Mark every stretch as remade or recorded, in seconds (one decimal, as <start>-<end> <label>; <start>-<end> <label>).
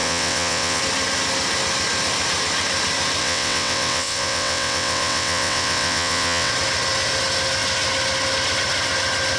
0.0-0.8 remade; 0.8-3.2 recorded; 3.2-6.5 remade; 6.5-9.4 recorded